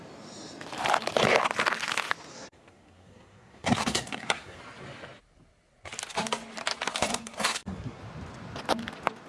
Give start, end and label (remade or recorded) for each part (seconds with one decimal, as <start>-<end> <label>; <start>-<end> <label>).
0.0-2.3 recorded; 2.3-4.6 remade; 4.6-7.1 recorded; 7.1-8.0 remade; 8.0-9.3 recorded